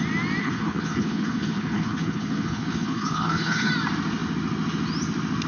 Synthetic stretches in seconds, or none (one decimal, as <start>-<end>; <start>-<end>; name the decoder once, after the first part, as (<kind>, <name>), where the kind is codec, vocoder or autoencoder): 0.4-3.7 (codec, HILCodec)